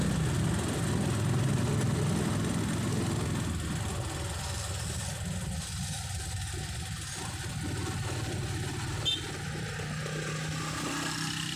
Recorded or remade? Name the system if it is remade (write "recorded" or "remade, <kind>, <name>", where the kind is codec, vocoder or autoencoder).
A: recorded